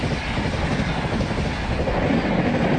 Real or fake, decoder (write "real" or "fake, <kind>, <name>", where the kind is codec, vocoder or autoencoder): real